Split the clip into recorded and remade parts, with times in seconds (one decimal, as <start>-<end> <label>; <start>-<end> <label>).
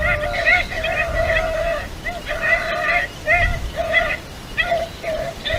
0.0-0.5 recorded; 0.5-1.3 remade; 1.3-5.6 recorded